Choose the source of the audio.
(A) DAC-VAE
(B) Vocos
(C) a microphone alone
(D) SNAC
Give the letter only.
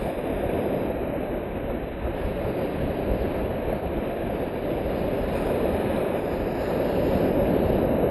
C